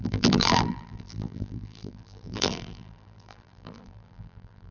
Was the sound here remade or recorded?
remade